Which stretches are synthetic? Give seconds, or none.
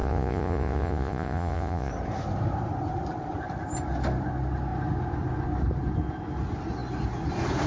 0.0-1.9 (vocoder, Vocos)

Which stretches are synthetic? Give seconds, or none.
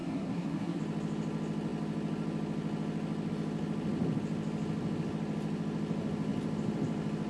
0.0-0.8 (codec, SNAC)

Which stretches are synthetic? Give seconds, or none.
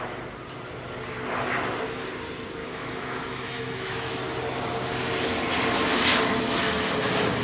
2.6-4.2 (autoencoder, DAC-VAE)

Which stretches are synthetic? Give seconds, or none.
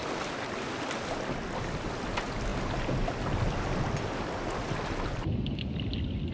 none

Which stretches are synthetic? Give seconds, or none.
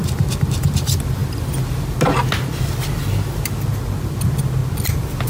none